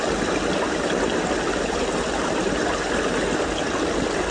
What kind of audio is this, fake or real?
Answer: real